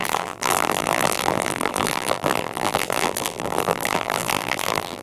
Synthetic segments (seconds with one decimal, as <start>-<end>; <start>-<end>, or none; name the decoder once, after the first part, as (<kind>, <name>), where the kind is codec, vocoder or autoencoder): 0.0-5.0 (vocoder, BigVGAN v2)